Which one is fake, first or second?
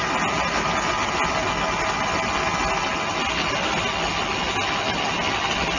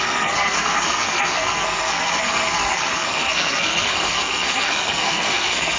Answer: second